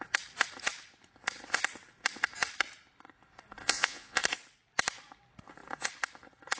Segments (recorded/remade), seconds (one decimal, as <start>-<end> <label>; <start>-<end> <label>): 0.0-3.6 recorded; 3.6-4.2 remade; 4.2-6.6 recorded